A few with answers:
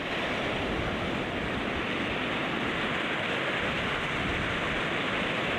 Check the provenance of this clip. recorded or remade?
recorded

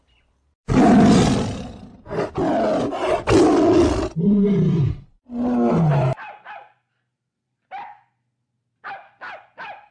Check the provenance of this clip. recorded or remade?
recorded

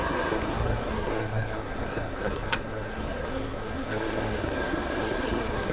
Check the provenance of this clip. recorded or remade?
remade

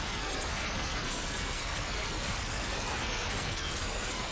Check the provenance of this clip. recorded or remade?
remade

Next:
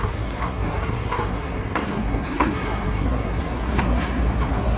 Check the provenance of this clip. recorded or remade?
remade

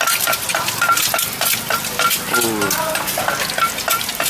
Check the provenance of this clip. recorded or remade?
recorded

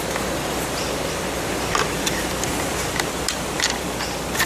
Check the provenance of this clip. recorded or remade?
recorded